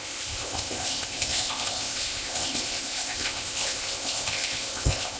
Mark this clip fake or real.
fake